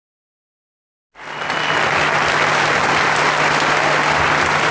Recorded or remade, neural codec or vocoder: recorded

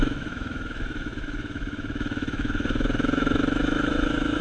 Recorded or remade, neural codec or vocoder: remade, autoencoder, DAC-VAE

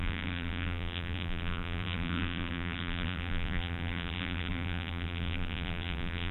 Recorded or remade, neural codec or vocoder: remade, vocoder, BigVGAN v2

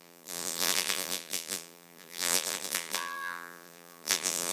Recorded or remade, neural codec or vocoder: remade, vocoder, BigVGAN v2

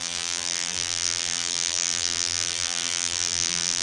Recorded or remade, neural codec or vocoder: remade, vocoder, BigVGAN v2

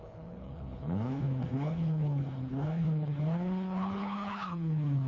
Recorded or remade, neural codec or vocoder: remade, codec, HILCodec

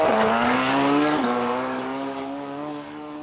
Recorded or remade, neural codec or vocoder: remade, codec, DAC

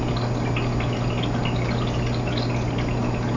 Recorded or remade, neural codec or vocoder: recorded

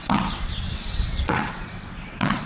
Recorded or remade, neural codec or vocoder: remade, vocoder, WaveNeXt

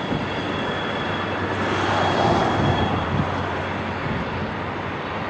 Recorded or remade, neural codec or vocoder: recorded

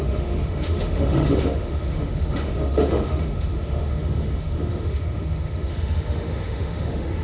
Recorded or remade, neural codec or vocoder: remade, autoencoder, DAC-VAE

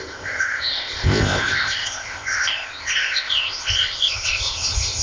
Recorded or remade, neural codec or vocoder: remade, codec, ZipCodec